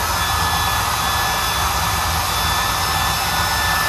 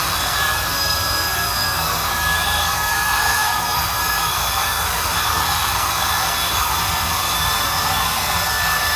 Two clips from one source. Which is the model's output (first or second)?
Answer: second